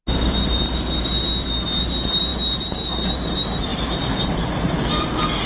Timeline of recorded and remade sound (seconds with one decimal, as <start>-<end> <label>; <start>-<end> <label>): 0.0-5.5 recorded